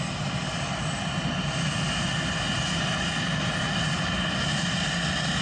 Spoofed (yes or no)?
no